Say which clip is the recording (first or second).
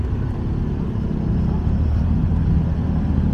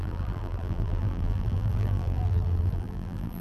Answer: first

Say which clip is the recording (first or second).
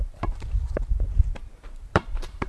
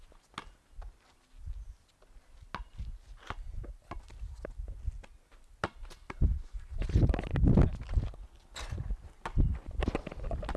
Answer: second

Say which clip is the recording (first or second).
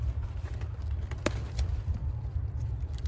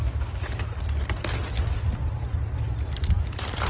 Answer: second